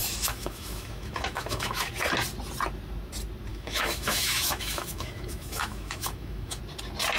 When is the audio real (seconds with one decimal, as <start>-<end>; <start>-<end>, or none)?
1.9-3.5; 6.6-7.2